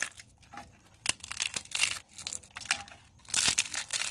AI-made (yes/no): no